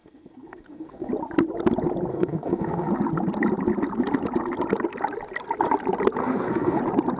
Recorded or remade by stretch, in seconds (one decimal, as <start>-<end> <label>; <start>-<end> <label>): 0.0-1.1 remade; 1.1-2.1 recorded; 2.1-2.9 remade; 2.9-6.2 recorded; 6.2-6.8 remade; 6.8-7.2 recorded